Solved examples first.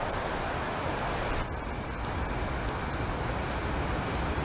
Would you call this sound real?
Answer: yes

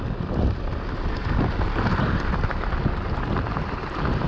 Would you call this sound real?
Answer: yes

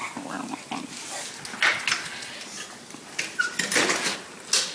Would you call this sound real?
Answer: yes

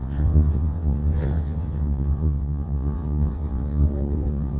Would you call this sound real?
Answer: no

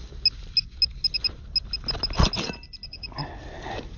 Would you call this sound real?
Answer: yes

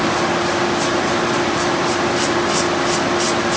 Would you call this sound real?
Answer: yes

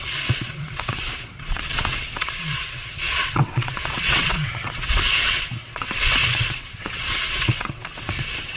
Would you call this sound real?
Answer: no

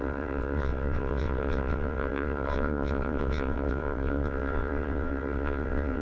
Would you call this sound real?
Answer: no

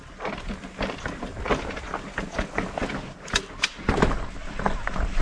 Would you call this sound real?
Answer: yes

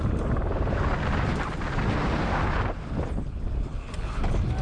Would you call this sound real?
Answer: yes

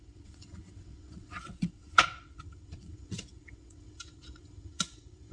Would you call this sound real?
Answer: no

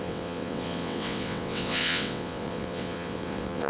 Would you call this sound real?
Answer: no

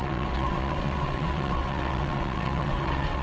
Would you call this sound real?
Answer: no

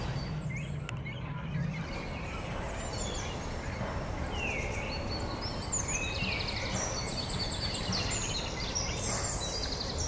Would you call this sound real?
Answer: yes